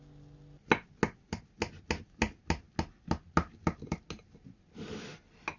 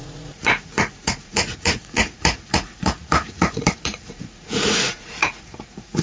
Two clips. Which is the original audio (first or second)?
first